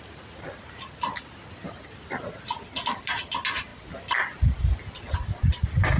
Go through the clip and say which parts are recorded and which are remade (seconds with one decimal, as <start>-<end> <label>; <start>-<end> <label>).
0.0-6.0 recorded